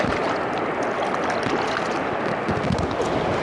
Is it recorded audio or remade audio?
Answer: recorded